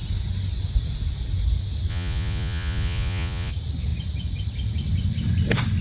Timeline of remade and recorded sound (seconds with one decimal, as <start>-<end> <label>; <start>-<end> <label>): 0.0-1.9 recorded; 1.9-3.5 remade; 3.5-5.8 recorded